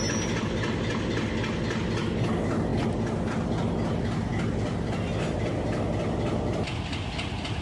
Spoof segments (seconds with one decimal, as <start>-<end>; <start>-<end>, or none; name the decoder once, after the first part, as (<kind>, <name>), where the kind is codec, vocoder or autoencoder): none